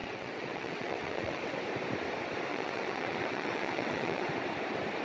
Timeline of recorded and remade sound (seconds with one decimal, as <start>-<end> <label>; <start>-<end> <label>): 0.0-1.4 remade; 1.4-2.5 recorded; 2.5-4.3 remade; 4.3-5.0 recorded